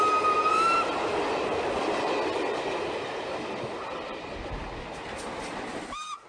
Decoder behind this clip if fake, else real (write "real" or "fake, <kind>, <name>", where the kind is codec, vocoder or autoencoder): real